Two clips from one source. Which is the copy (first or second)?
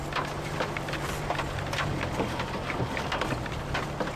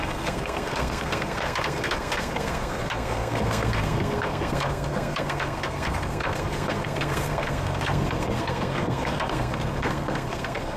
second